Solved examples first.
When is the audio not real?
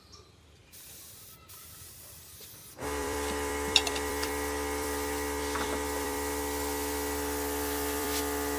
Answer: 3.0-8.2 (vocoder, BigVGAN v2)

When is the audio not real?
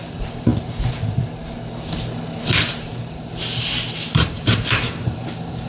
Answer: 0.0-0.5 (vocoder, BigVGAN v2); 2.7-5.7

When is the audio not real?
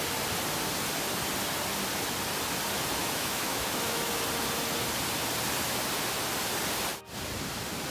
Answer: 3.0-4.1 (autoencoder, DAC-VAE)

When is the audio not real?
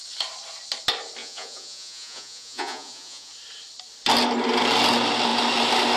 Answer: 1.2-3.3 (vocoder, Vocos)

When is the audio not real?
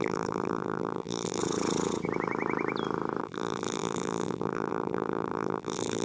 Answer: 0.0-1.4 (vocoder, BigVGAN v2); 3.2-6.0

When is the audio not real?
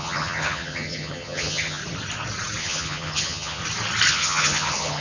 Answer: 0.0-1.8 (vocoder, HiFi-GAN); 2.6-3.6; 4.1-5.0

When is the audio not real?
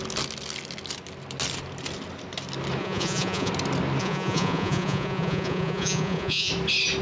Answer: 2.8-3.5 (vocoder, Vocos); 4.0-6.5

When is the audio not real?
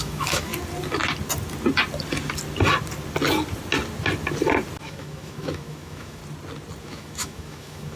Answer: 0.0-0.5 (autoencoder, DAC-VAE); 4.8-6.2; 6.8-8.0